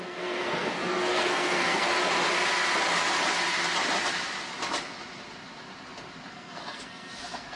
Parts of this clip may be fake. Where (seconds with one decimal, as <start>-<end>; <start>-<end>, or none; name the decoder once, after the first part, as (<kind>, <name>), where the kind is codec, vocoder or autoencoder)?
0.0-1.9 (codec, SNAC); 6.3-7.6